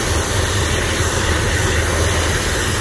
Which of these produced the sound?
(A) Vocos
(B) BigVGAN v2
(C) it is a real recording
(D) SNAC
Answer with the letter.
C